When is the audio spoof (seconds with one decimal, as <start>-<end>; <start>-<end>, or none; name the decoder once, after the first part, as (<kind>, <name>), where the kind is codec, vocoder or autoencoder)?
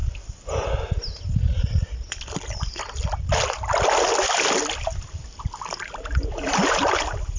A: none